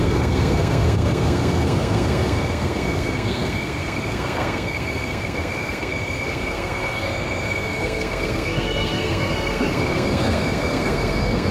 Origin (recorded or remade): remade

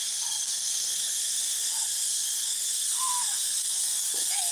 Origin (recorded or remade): remade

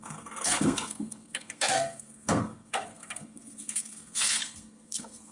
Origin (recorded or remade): remade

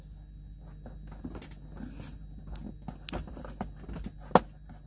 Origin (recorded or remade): recorded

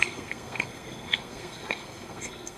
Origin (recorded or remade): remade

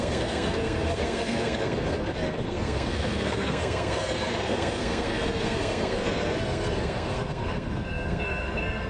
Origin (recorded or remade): remade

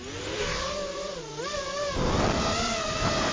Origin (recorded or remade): recorded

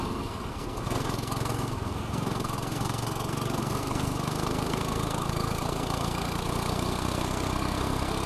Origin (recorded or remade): remade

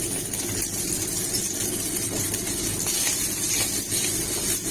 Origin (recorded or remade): recorded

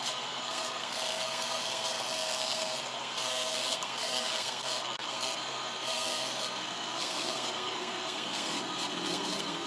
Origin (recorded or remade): remade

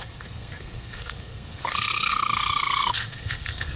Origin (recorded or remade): remade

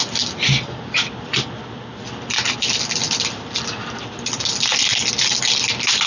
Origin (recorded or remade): recorded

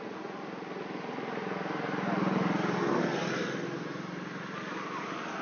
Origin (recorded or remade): recorded